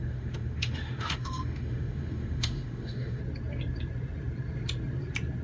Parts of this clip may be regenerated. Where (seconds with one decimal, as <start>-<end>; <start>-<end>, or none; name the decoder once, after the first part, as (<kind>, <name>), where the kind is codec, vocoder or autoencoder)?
0.0-3.2 (autoencoder, DAC-VAE)

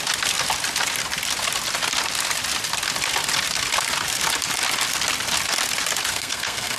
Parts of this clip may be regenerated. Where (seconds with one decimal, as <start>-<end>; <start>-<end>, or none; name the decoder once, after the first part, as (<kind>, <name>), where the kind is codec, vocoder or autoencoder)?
6.1-6.8 (codec, SNAC)

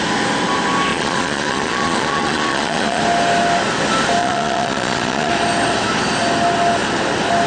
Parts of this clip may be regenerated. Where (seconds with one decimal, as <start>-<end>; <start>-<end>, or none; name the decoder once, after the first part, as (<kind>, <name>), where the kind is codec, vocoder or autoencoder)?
0.9-3.0 (vocoder, Vocos); 4.2-5.3

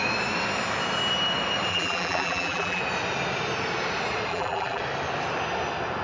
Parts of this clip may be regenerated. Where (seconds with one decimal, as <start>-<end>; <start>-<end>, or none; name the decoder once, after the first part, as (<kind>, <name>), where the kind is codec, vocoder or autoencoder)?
1.7-2.8 (vocoder, BigVGAN v2); 4.3-4.8

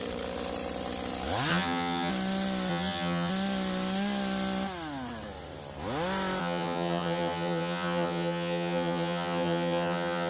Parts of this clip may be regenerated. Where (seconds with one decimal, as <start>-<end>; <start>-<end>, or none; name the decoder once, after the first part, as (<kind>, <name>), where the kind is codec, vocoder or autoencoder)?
1.5-2.1 (vocoder, HiFi-GAN); 2.7-3.3; 6.4-10.3